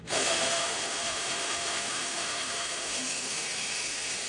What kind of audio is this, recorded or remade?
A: remade